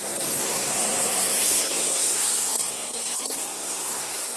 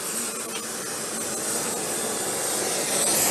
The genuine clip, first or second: second